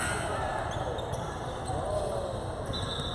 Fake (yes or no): no